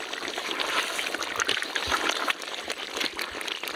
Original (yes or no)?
yes